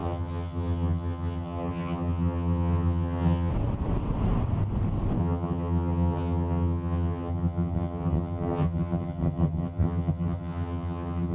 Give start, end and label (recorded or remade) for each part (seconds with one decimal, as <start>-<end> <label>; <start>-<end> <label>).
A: 0.0-3.5 remade; 3.5-5.2 recorded; 5.2-11.3 remade